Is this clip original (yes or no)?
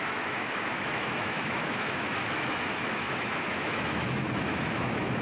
no